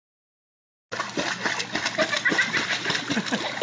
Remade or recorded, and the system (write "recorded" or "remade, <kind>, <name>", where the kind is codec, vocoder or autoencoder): recorded